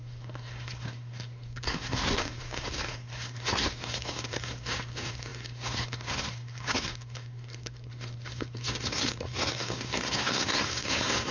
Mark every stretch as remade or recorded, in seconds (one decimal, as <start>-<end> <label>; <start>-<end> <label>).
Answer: 0.0-11.3 remade

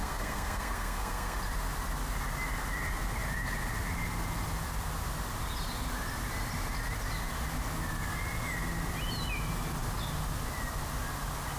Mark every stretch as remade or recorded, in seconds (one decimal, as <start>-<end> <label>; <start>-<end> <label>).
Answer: 0.0-1.4 remade; 1.4-11.6 recorded